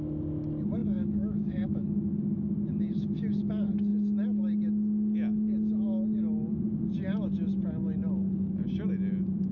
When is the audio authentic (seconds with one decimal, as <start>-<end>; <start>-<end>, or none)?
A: 0.0-0.8; 2.5-9.5